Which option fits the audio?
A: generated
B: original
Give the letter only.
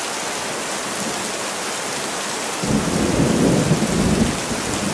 B